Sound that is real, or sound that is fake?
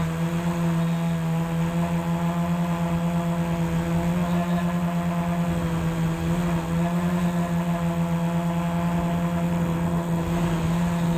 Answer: real